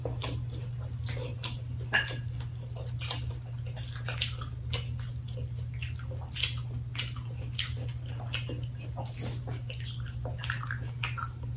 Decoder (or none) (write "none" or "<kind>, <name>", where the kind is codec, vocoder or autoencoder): none